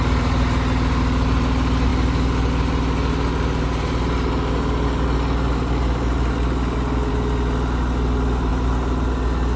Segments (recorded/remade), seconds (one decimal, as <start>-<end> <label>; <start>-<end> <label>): 0.0-9.6 recorded